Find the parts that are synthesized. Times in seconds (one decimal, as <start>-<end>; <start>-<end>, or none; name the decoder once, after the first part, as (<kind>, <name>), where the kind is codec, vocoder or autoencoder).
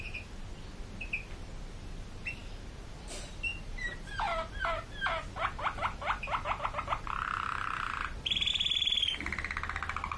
none